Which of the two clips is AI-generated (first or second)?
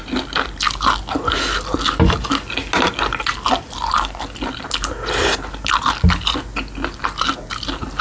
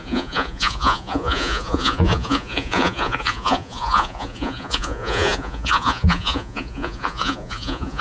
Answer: second